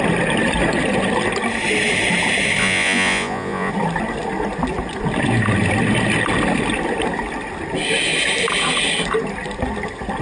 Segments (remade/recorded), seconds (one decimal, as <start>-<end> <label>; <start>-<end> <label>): 0.0-2.6 recorded; 2.6-3.7 remade; 3.7-10.2 recorded

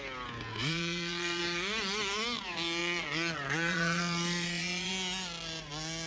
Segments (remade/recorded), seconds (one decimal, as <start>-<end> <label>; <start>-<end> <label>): 0.0-0.5 recorded; 0.5-1.4 remade; 1.4-2.8 recorded; 2.8-4.9 remade; 4.9-6.1 recorded